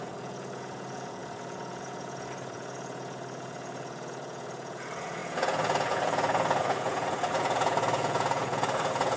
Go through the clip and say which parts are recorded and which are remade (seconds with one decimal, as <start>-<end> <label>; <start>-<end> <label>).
0.0-9.2 remade